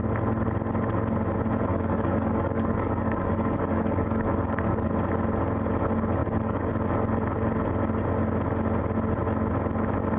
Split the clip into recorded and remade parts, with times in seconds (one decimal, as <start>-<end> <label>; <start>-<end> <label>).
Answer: 0.0-1.7 recorded; 1.7-4.9 remade; 4.9-6.2 recorded; 6.2-6.7 remade; 6.7-10.2 recorded